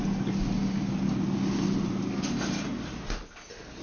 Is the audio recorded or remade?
recorded